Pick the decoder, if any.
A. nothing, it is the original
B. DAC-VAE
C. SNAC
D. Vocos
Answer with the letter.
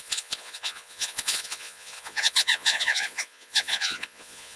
D